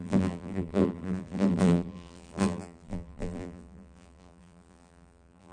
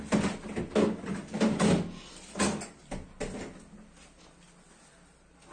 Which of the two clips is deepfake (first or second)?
first